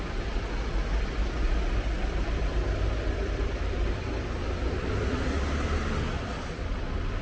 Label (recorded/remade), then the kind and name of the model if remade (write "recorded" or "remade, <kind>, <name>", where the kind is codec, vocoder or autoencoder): recorded